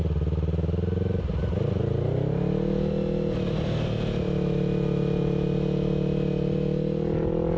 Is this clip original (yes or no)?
yes